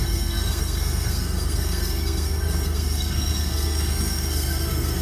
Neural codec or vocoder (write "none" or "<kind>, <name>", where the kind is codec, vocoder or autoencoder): codec, SNAC